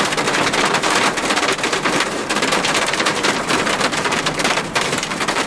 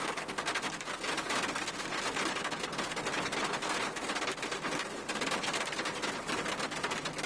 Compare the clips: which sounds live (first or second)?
second